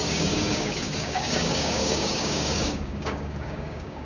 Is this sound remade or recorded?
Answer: remade